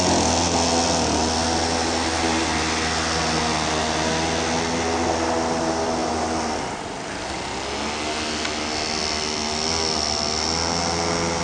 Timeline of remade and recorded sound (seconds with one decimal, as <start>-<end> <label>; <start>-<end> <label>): 0.0-11.4 recorded